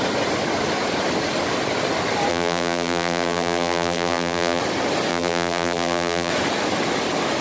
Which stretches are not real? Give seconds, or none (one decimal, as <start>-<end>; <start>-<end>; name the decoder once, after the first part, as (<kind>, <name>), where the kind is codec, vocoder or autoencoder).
2.3-4.6 (vocoder, BigVGAN v2); 5.1-6.3